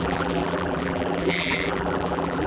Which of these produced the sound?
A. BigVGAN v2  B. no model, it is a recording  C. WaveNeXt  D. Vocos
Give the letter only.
A